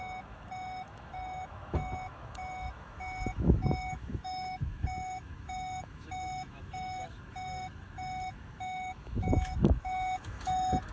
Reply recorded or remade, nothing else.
remade